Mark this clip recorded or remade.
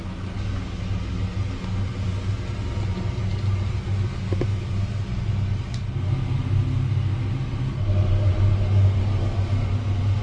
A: recorded